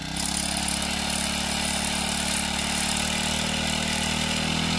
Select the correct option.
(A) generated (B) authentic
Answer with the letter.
B